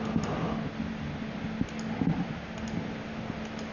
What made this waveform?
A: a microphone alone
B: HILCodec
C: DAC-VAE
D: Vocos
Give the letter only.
A